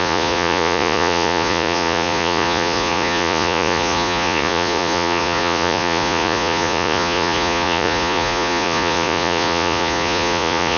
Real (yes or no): no